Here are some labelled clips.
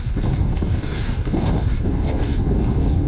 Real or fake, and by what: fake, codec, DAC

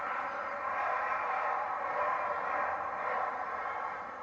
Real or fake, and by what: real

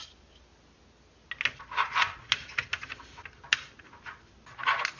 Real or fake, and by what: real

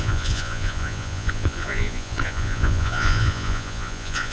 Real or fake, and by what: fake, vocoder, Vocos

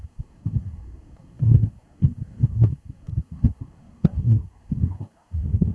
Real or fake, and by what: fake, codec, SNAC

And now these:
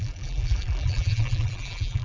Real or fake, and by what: fake, vocoder, BigVGAN v2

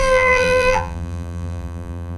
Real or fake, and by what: fake, vocoder, BigVGAN v2